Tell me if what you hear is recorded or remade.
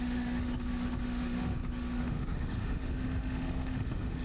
remade